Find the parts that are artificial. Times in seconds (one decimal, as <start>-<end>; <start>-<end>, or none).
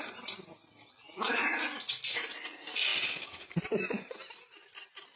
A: none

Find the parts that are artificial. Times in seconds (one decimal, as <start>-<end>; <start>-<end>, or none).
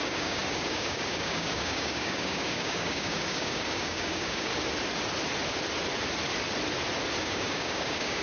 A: 0.0-4.5; 7.2-8.2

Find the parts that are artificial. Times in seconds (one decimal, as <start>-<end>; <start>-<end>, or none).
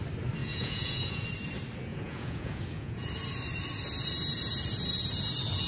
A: 0.4-1.2; 1.9-3.1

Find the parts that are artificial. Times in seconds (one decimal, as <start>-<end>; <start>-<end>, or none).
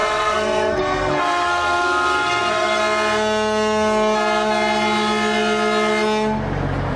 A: 0.0-2.8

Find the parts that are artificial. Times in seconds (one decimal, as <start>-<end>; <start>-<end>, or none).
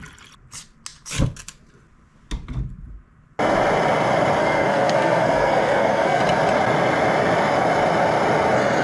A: 4.4-6.2